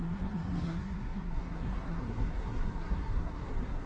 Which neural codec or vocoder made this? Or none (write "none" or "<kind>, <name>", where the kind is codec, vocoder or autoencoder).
codec, SNAC